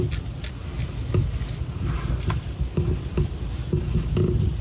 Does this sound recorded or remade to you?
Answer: recorded